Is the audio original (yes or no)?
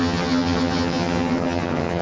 no